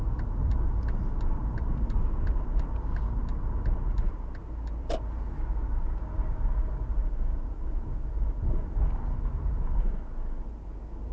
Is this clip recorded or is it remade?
recorded